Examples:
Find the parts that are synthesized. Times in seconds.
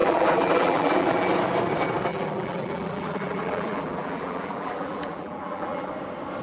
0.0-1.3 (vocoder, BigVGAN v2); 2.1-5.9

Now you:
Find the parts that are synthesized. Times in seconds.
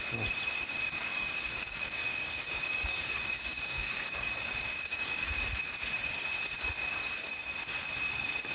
0.7-5.4 (codec, DAC)